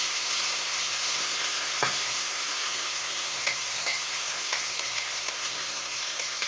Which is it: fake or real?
fake